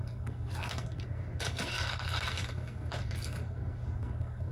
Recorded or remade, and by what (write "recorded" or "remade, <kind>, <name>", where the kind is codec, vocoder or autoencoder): remade, codec, SNAC